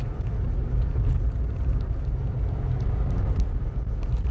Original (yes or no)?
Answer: yes